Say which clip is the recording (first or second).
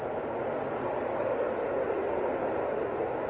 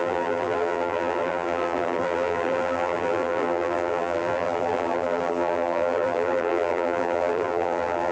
first